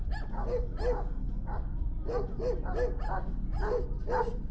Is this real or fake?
real